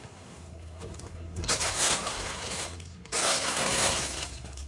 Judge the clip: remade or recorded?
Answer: remade